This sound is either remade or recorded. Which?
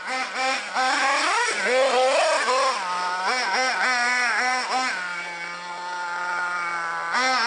recorded